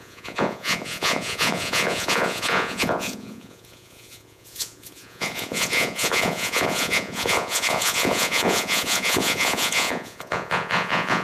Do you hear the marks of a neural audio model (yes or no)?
yes